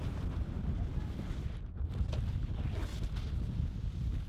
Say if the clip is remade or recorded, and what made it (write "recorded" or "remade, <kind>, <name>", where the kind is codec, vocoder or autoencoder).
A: recorded